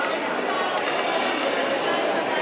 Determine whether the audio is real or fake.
real